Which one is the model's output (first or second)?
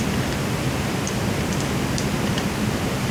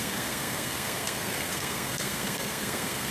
second